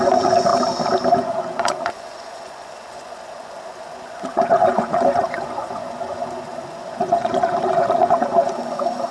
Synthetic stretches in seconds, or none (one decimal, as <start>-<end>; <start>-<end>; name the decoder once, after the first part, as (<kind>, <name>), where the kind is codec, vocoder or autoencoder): 0.0-0.5 (vocoder, Vocos); 1.1-9.1